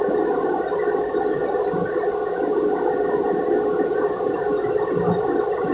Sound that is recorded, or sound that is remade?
recorded